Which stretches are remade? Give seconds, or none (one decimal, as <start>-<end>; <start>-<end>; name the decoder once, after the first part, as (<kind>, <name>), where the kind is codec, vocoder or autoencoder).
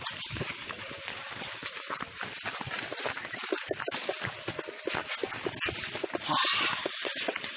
0.0-1.6 (vocoder, BigVGAN v2); 6.2-7.6